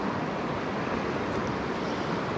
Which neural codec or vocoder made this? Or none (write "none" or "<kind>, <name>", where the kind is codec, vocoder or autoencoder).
none